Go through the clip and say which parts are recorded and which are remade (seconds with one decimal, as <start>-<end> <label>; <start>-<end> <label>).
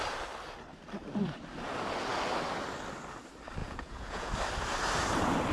0.0-3.6 recorded; 3.6-4.3 remade; 4.3-5.5 recorded